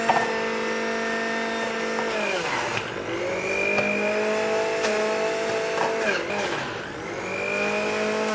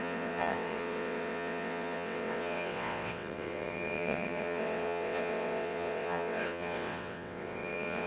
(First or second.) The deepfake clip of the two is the second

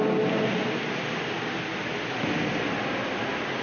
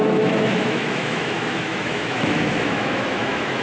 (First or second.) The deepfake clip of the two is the second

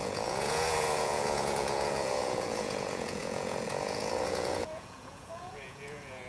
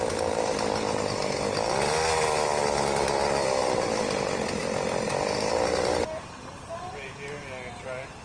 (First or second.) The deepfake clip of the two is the first